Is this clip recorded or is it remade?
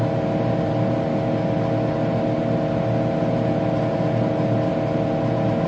recorded